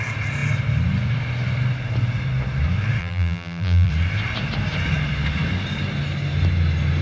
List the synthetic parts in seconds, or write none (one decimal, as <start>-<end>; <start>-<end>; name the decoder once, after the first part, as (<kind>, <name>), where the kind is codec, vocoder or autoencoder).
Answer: 3.0-3.9 (vocoder, BigVGAN v2)